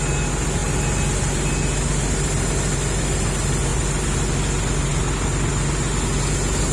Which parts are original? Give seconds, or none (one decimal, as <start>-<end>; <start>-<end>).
0.0-6.7